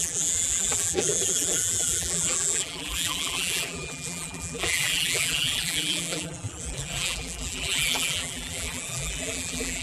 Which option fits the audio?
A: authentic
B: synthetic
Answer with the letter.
B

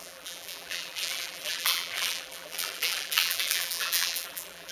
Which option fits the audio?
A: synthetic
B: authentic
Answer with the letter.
A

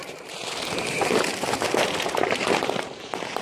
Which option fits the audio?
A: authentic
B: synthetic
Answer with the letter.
B